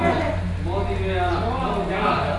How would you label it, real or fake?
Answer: real